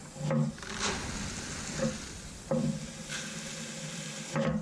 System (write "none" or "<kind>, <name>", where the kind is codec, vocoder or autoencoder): none